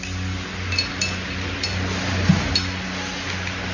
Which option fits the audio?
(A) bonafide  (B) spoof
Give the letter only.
A